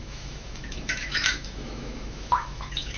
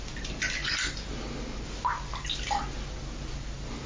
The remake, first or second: first